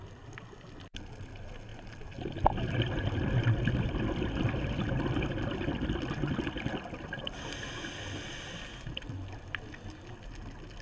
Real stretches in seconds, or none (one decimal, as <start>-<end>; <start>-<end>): 0.0-1.7; 5.9-10.8

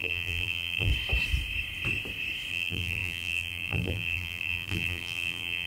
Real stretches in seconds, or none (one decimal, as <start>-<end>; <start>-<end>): 0.9-2.5

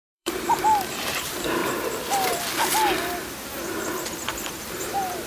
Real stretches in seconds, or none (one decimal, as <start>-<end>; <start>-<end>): 1.6-4.7